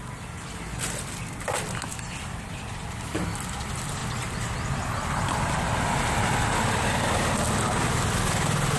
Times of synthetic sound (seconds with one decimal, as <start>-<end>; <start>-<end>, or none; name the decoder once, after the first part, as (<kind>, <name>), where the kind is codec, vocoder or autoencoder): none